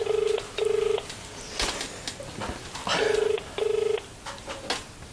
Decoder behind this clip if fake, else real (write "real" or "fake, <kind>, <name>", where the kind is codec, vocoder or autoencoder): real